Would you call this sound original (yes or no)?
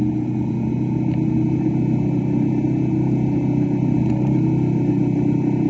yes